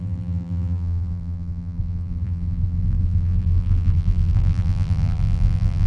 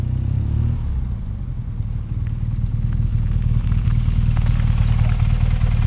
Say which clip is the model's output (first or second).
first